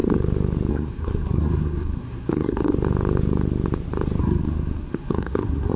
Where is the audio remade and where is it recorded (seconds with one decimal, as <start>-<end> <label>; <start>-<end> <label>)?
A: 0.0-0.7 recorded; 0.7-2.6 remade; 2.6-4.2 recorded; 4.2-5.8 remade